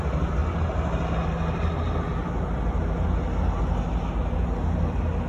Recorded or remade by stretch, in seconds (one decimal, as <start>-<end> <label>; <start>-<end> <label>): 0.0-5.3 recorded